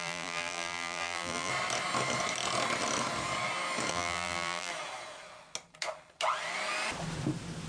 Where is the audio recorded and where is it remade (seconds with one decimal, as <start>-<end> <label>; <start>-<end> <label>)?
0.0-1.5 remade; 1.5-3.9 recorded; 3.9-4.7 remade; 4.7-7.7 recorded